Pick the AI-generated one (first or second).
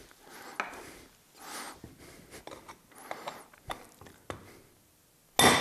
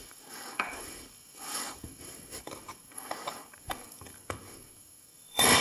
second